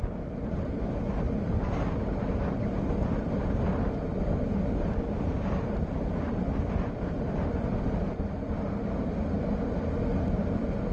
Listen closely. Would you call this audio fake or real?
real